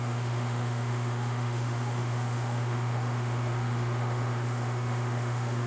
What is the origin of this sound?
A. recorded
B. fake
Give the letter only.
B